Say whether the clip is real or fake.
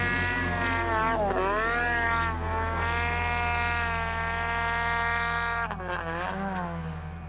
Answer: real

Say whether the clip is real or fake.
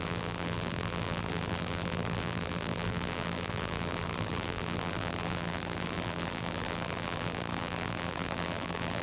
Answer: fake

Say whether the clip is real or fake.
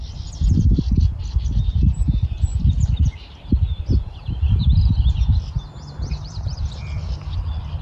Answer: fake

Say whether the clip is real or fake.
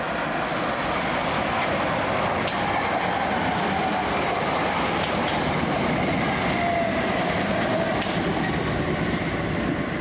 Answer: real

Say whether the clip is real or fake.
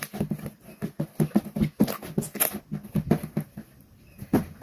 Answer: real